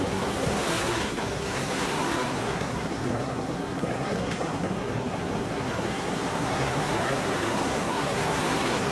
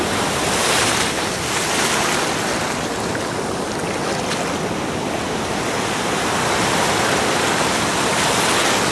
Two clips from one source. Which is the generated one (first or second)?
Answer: first